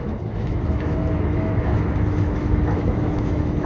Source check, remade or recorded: remade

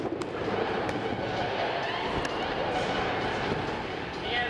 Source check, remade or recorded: recorded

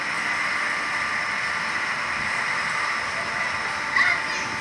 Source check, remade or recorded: recorded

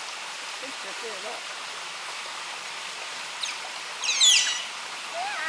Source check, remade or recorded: recorded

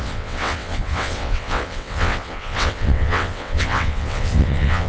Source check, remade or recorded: remade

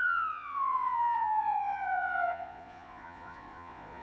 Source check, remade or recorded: remade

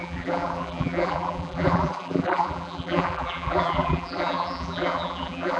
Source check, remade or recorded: remade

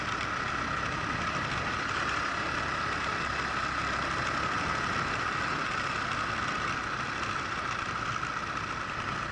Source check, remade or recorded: recorded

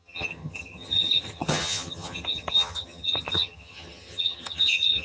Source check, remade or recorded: remade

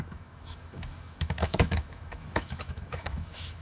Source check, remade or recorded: remade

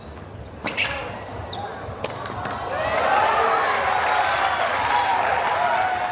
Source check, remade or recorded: recorded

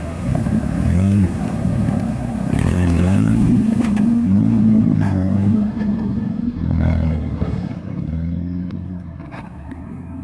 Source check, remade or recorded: remade